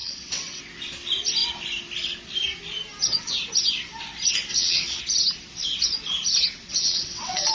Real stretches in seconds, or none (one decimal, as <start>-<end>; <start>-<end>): 0.6-4.5; 5.0-6.7